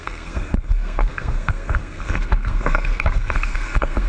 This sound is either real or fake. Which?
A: fake